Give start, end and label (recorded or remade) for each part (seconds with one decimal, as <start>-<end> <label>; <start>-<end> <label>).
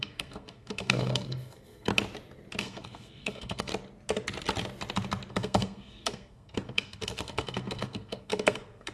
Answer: 0.0-1.9 remade; 1.9-2.6 recorded; 2.6-3.7 remade; 3.7-5.3 recorded; 5.3-8.9 remade